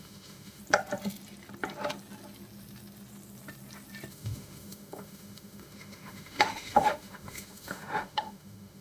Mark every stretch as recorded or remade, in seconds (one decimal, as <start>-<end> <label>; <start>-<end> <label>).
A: 0.0-0.6 remade; 0.6-4.1 recorded; 4.1-8.8 remade